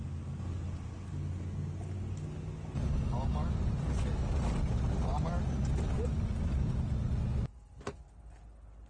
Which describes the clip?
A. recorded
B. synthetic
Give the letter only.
A